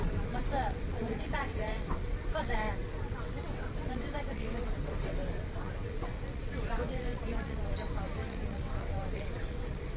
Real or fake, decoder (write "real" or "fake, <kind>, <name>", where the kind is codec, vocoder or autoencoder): fake, vocoder, WaveNeXt